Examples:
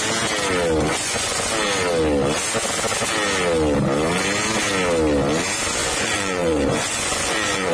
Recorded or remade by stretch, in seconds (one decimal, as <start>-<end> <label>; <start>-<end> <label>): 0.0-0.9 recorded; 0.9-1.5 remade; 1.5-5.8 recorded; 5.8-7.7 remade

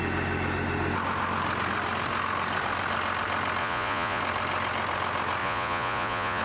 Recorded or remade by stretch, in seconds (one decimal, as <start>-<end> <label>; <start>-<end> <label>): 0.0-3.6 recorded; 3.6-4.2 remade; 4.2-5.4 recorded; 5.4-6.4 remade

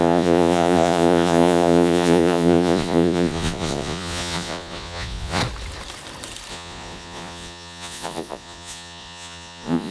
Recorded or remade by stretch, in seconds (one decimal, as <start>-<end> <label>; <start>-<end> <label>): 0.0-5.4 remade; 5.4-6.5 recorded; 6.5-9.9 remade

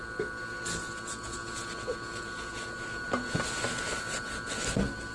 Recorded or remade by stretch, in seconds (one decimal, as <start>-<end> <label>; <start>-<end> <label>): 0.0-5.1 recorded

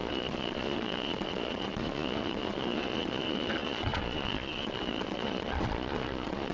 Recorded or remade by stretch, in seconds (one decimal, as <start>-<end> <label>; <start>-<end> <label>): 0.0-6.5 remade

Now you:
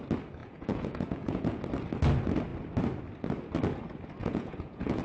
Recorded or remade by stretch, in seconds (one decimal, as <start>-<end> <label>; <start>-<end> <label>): 0.0-0.4 recorded; 0.4-1.6 remade; 1.6-4.2 recorded; 4.2-5.0 remade

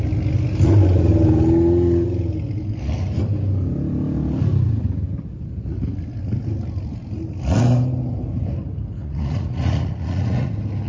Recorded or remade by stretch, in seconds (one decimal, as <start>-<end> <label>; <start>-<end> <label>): 0.0-9.0 recorded; 9.0-10.5 remade; 10.5-10.9 recorded